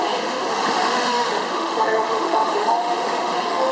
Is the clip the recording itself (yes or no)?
no